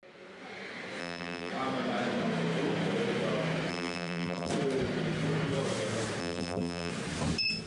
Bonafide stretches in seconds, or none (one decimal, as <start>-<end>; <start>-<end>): 0.0-1.0; 1.5-3.7; 4.5-6.2; 6.9-7.7